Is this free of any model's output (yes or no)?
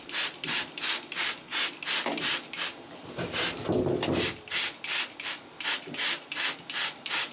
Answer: yes